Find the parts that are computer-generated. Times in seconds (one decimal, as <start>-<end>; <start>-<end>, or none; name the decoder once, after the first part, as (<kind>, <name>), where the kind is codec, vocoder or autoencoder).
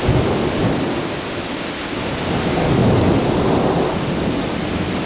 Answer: none